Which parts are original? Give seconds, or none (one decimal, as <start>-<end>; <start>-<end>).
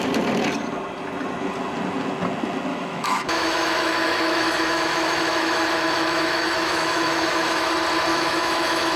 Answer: 0.0-2.7; 7.7-8.1